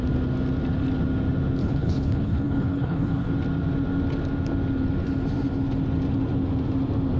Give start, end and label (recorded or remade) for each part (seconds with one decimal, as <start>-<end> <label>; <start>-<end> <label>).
0.0-1.6 recorded; 1.6-3.3 remade; 3.3-7.2 recorded